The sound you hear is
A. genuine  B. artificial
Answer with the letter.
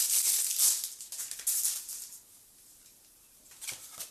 A